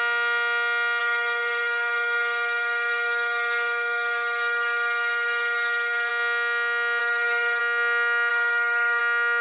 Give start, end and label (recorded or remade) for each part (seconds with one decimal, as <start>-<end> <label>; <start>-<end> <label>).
0.0-1.0 recorded; 1.0-6.1 remade; 6.1-7.0 recorded; 7.0-7.6 remade; 7.6-8.3 recorded; 8.3-9.0 remade; 9.0-9.4 recorded